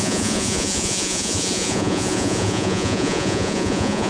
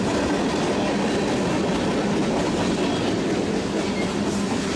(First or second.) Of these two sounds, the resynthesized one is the first